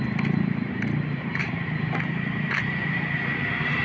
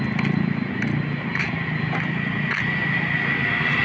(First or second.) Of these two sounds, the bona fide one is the second